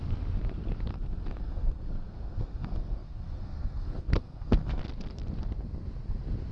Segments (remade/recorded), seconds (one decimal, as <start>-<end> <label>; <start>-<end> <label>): 0.0-0.9 recorded; 0.9-4.8 remade; 4.8-6.5 recorded